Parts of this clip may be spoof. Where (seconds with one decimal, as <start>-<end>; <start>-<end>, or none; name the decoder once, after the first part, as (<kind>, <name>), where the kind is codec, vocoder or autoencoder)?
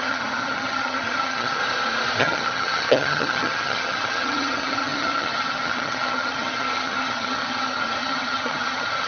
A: 0.0-1.6 (vocoder, HiFi-GAN); 2.2-9.1